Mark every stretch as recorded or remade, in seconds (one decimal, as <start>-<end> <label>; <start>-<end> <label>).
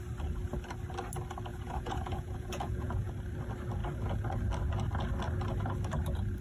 0.0-1.5 recorded; 1.5-3.1 remade; 3.1-6.4 recorded